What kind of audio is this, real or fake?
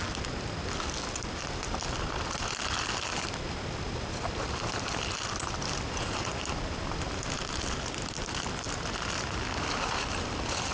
real